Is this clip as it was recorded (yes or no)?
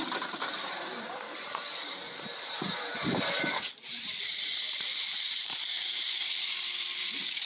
no